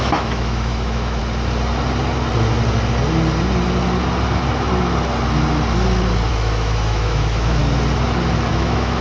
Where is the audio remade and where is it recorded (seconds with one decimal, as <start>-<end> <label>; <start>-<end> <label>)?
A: 0.0-1.2 remade; 1.2-6.3 recorded; 6.3-7.6 remade; 7.6-8.5 recorded; 8.5-9.0 remade

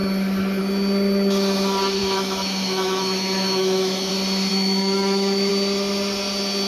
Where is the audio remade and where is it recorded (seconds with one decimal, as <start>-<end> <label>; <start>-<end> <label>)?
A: 0.0-2.0 recorded; 2.0-4.1 remade; 4.1-4.5 recorded; 4.5-5.5 remade; 5.5-6.7 recorded

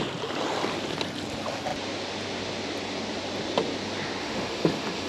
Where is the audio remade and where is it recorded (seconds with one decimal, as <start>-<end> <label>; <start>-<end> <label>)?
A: 0.0-4.2 recorded; 4.2-5.1 remade

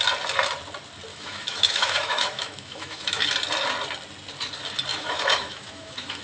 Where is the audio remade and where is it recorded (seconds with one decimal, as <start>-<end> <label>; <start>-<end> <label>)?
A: 0.0-1.1 recorded; 1.1-3.3 remade; 3.3-4.9 recorded; 4.9-6.2 remade

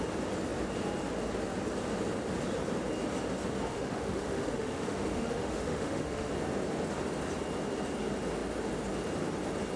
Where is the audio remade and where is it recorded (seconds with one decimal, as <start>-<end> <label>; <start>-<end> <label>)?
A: 0.0-3.7 recorded; 3.7-6.3 remade; 6.3-9.8 recorded